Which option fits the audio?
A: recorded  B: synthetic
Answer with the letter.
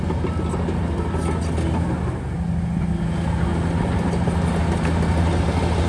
A